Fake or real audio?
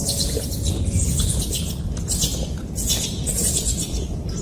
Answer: real